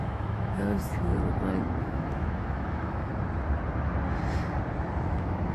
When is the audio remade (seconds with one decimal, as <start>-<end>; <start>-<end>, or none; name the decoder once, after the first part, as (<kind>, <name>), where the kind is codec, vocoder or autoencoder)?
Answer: 0.0-1.1 (autoencoder, DAC-VAE); 1.8-3.1; 5.0-5.5